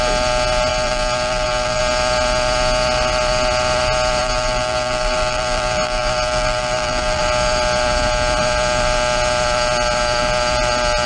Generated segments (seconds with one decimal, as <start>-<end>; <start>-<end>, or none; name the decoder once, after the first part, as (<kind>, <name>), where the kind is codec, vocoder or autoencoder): 0.7-1.8 (vocoder, BigVGAN v2); 4.2-7.2